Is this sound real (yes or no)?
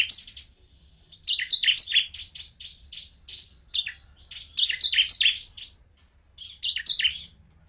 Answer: yes